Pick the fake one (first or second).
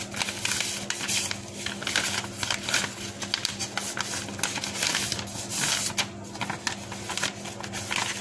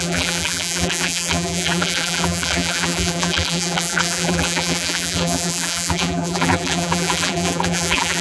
second